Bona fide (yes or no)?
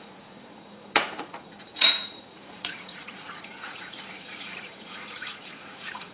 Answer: no